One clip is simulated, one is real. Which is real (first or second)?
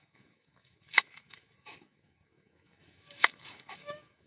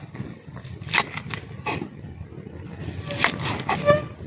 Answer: second